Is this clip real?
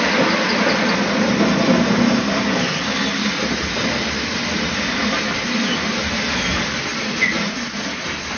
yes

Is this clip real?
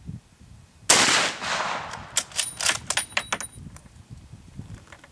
yes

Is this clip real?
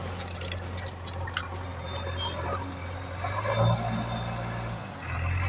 yes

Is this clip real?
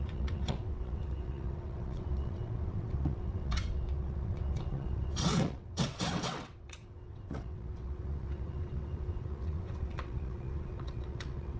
no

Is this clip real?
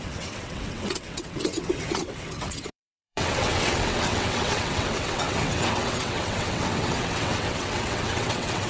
no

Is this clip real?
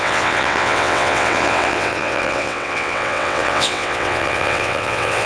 no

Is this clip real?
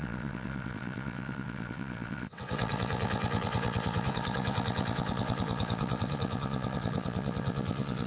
no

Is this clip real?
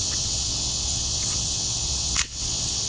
no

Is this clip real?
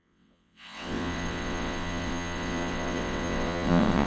no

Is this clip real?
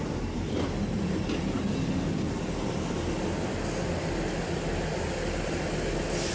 yes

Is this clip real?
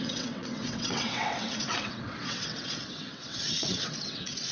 no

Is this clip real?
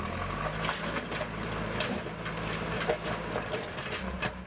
yes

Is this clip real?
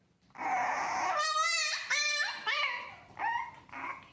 yes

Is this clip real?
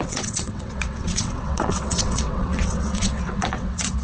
no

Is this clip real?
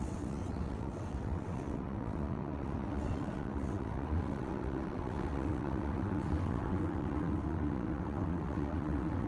no